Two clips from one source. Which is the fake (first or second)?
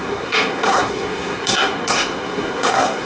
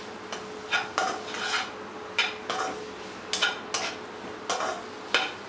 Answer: first